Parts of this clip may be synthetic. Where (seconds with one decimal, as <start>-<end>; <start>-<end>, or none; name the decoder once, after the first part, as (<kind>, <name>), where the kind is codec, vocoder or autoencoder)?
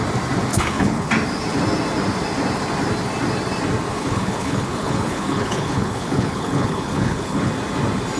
0.5-1.1 (codec, HILCodec); 3.9-7.5